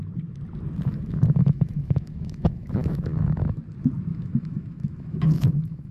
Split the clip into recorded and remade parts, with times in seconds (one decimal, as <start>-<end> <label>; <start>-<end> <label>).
0.0-0.9 recorded; 0.9-3.6 remade; 3.6-4.1 recorded; 4.1-5.9 remade

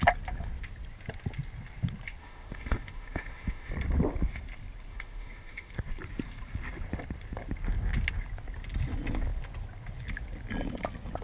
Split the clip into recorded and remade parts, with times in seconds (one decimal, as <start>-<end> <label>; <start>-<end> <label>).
0.0-2.2 recorded; 2.2-3.7 remade; 3.7-4.9 recorded; 4.9-5.7 remade; 5.7-11.2 recorded

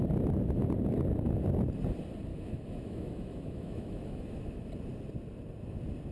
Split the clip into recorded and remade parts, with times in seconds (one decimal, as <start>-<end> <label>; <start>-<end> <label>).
0.0-2.3 recorded; 2.3-4.7 remade; 4.7-6.1 recorded